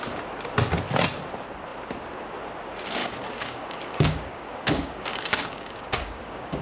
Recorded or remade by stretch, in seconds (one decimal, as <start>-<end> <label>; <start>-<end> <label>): 0.0-3.0 recorded; 3.0-6.6 remade